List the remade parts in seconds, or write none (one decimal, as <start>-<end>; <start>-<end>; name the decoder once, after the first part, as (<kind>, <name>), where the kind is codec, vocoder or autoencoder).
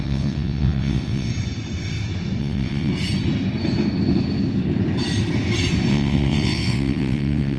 0.0-1.3 (vocoder, WaveNeXt); 2.4-2.9; 5.9-7.6